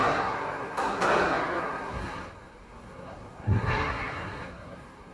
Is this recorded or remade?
remade